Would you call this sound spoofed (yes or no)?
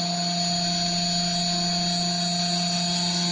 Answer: no